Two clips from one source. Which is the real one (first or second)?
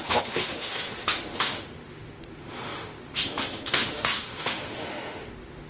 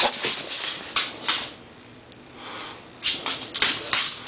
second